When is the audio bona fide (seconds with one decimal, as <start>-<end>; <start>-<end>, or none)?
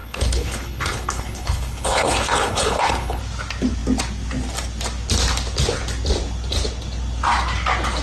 3.2-8.0